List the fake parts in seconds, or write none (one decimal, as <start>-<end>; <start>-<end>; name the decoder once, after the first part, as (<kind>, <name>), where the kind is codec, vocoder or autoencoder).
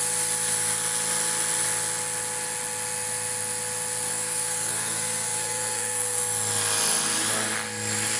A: 4.1-6.2 (codec, SNAC)